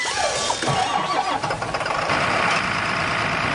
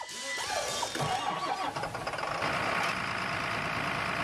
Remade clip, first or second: first